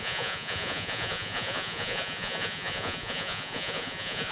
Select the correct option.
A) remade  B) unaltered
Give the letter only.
A